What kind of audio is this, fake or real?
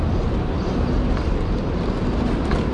fake